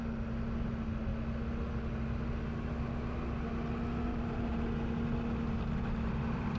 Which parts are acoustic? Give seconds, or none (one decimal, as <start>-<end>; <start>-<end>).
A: 0.0-4.1; 4.6-6.6